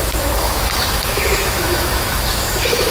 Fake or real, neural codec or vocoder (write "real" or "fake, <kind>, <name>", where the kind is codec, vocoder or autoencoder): fake, autoencoder, DAC-VAE